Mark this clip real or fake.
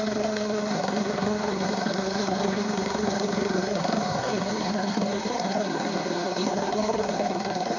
fake